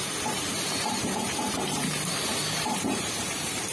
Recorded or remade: remade